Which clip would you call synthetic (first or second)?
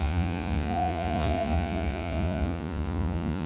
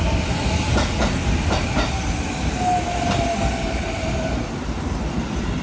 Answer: first